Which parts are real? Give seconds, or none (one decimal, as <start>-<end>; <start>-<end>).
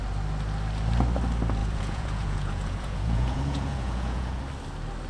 0.0-1.6; 4.4-5.1